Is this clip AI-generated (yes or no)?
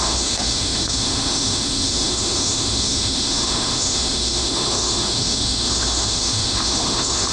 yes